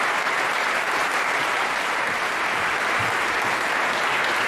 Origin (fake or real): fake